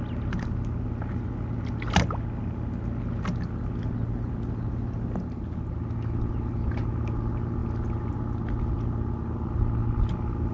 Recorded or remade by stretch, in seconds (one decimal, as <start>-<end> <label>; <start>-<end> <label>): 0.0-10.5 recorded